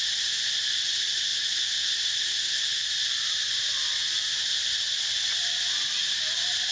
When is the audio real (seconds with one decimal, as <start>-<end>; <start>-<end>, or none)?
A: 0.0-6.7